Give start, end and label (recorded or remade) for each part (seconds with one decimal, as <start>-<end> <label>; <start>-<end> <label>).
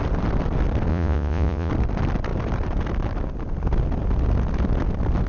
0.0-0.9 recorded; 0.9-1.7 remade; 1.7-5.3 recorded